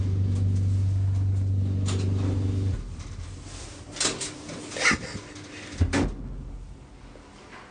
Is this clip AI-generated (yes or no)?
no